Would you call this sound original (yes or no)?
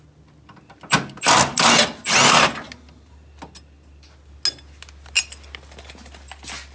yes